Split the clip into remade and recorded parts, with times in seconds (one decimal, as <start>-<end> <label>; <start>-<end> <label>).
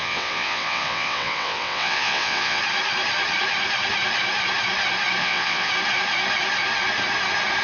0.0-2.6 remade; 2.6-5.2 recorded; 5.2-5.7 remade; 5.7-7.6 recorded